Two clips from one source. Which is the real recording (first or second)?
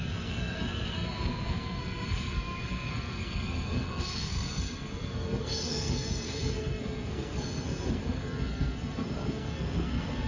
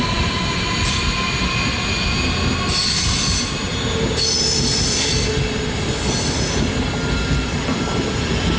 second